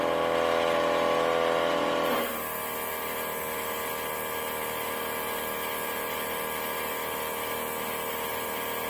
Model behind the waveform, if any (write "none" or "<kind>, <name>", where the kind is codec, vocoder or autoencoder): none